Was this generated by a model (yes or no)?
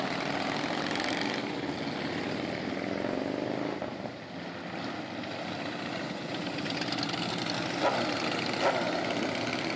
no